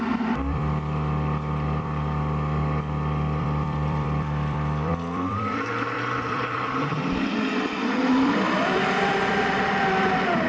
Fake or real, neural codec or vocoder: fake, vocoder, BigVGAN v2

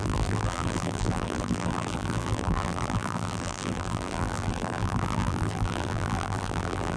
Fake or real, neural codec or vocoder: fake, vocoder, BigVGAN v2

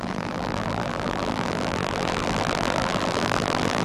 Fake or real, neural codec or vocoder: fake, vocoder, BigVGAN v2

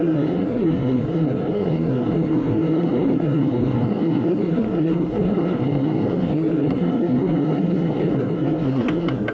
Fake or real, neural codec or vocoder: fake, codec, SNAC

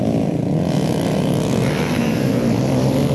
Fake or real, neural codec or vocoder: real